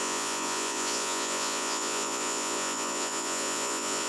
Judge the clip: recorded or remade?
remade